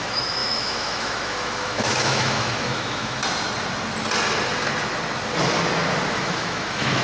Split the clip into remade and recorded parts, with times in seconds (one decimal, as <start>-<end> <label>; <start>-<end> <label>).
0.0-3.2 remade; 3.2-6.1 recorded; 6.1-7.0 remade